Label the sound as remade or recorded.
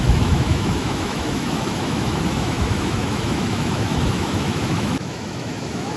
remade